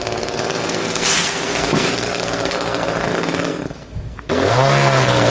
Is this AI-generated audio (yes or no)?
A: yes